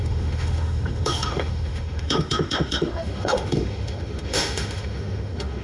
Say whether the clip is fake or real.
fake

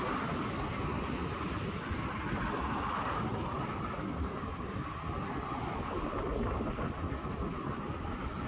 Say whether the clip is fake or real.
real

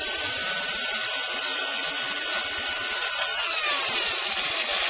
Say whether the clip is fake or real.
fake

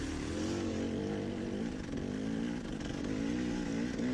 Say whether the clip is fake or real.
real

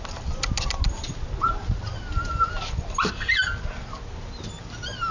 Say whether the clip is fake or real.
real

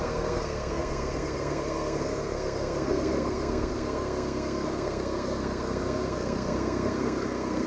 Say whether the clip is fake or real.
fake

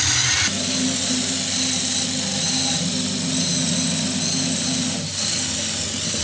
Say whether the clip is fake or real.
real